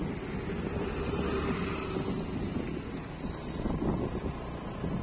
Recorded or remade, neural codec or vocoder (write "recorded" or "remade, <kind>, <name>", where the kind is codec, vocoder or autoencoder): recorded